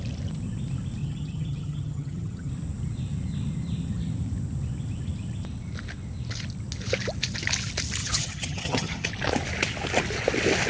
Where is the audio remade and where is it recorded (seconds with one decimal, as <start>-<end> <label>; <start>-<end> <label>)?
0.0-1.0 recorded; 1.0-2.5 remade; 2.5-8.0 recorded; 8.0-9.1 remade; 9.1-10.7 recorded